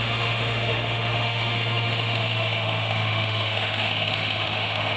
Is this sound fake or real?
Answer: fake